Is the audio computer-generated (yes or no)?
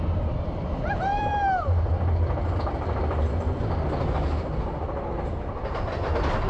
no